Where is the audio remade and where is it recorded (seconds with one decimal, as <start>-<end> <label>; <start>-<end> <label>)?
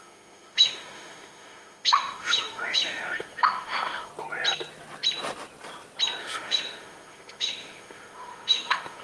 0.0-4.1 remade; 4.1-6.2 recorded; 6.2-9.0 remade